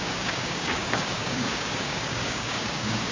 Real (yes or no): no